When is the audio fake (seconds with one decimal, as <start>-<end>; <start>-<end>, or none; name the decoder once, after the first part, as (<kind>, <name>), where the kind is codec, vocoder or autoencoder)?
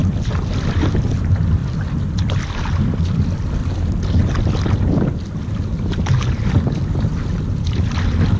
1.2-3.6 (vocoder, BigVGAN v2); 6.5-8.4